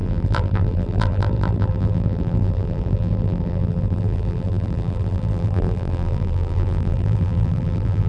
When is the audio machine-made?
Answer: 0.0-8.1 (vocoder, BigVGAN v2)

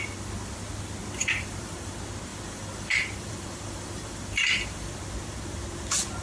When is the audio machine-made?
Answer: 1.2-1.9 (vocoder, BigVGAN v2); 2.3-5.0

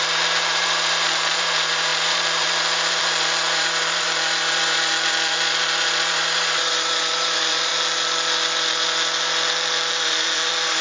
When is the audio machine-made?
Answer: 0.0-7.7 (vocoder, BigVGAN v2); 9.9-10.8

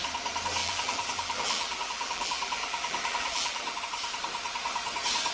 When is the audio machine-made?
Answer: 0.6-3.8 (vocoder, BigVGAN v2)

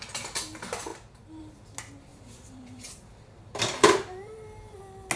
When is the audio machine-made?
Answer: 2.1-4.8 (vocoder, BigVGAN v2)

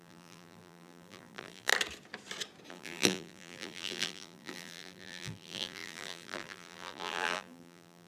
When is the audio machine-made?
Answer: 0.0-1.7 (vocoder, BigVGAN v2); 2.7-8.1

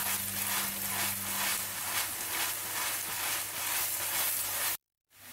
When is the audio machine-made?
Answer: none

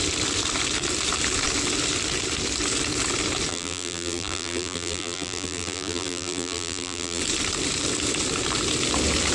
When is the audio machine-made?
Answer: 3.5-7.2 (vocoder, BigVGAN v2)